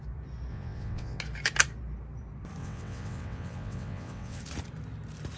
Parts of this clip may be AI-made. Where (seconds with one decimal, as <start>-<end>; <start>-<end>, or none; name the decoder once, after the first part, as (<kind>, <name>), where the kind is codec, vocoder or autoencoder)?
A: 0.5-1.2 (vocoder, WaveNeXt); 2.6-4.4